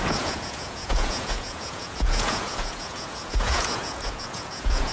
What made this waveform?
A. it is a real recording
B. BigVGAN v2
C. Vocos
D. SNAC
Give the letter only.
C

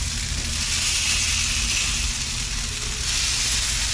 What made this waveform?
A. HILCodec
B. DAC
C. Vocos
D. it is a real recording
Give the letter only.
D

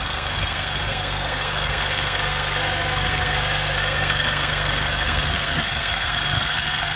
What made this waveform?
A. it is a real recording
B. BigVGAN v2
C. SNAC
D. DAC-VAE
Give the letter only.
C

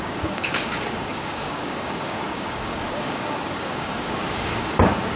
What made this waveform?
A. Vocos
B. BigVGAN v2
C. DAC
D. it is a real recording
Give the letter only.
C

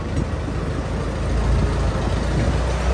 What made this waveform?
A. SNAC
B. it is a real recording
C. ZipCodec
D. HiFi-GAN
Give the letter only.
B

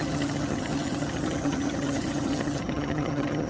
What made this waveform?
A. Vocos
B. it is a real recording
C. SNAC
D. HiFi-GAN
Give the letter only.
D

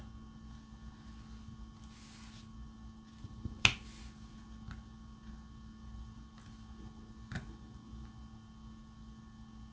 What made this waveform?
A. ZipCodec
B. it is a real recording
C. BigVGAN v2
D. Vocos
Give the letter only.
B